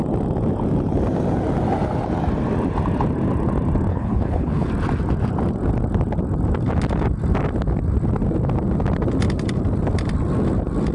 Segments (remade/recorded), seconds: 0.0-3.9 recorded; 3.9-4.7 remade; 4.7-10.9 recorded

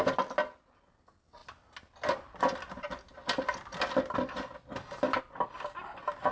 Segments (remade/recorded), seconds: 0.0-6.3 recorded

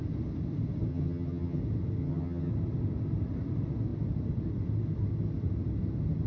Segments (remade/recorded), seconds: 0.0-0.9 recorded; 0.9-1.6 remade; 1.6-2.0 recorded; 2.0-2.5 remade; 2.5-6.3 recorded

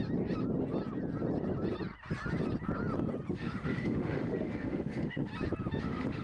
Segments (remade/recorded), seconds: 0.0-3.3 recorded; 3.3-5.3 remade; 5.3-5.8 recorded; 5.8-6.2 remade

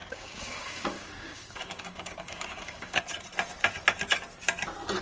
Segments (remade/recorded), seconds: 0.0-3.0 remade; 3.0-5.0 recorded

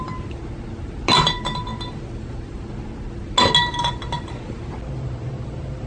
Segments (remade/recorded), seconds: 0.0-5.9 recorded

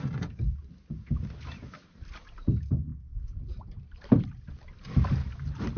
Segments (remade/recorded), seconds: 0.0-5.8 recorded